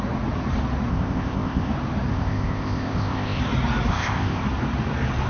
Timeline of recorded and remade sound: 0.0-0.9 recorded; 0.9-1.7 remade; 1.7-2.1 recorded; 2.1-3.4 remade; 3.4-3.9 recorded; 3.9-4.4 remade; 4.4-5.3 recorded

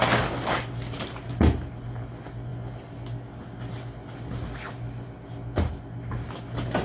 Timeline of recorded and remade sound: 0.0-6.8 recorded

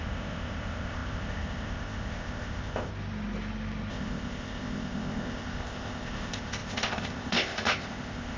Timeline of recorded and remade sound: 0.0-2.9 remade; 2.9-3.9 recorded; 3.9-8.4 remade

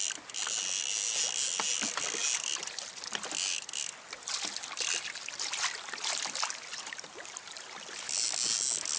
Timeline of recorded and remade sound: 0.0-9.0 recorded